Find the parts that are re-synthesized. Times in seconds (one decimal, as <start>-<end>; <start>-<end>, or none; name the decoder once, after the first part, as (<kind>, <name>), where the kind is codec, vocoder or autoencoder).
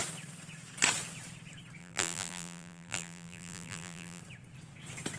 1.8-4.2 (vocoder, BigVGAN v2)